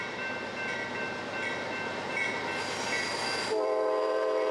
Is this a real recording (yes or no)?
no